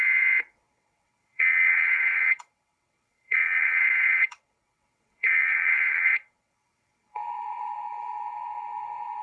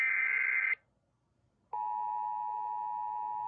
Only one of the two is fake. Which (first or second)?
first